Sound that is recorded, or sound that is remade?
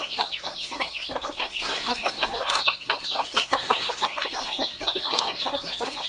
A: remade